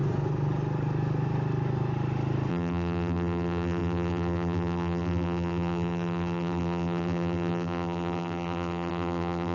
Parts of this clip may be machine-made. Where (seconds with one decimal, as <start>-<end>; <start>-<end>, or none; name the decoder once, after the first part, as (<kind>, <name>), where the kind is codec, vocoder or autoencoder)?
2.5-9.5 (vocoder, BigVGAN v2)